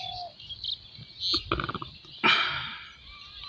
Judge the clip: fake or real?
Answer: real